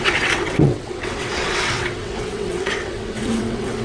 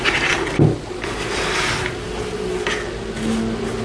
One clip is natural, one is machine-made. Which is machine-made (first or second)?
first